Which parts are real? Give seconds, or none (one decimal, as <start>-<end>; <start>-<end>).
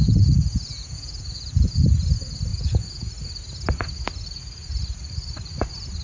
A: 1.8-2.5; 3.1-6.0